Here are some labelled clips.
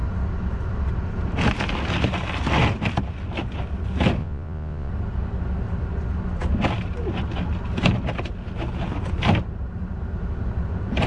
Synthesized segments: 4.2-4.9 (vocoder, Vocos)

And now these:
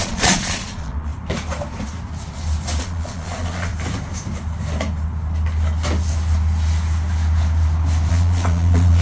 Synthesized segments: 0.0-1.1 (vocoder, Vocos); 2.8-3.7; 8.1-9.0

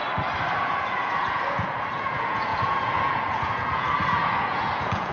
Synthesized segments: 0.6-5.1 (vocoder, Vocos)